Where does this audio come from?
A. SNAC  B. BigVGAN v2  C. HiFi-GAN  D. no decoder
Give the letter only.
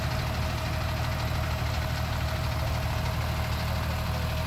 D